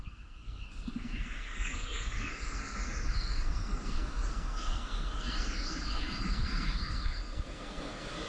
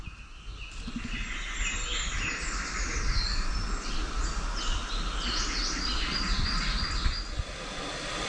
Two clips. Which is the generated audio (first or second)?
first